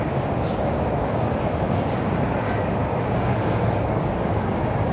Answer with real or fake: fake